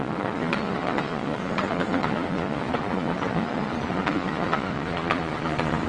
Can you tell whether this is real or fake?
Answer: fake